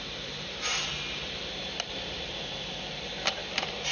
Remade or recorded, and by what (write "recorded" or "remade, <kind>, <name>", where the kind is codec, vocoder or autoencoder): remade, vocoder, BigVGAN v2